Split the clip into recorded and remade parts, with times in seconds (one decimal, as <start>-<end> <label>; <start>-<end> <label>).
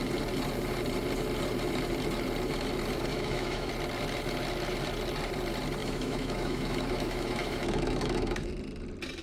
0.0-3.1 recorded; 3.1-3.7 remade; 3.7-5.8 recorded; 5.8-8.5 remade; 8.5-9.2 recorded